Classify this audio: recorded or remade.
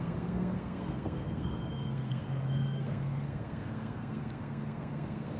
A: remade